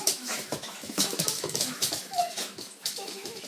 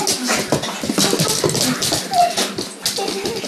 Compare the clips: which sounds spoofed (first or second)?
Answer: first